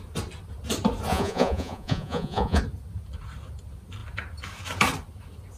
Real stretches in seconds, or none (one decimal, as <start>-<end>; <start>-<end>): 0.0-1.1; 2.6-5.6